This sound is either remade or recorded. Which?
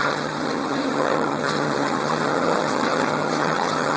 remade